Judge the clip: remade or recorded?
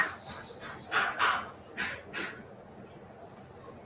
recorded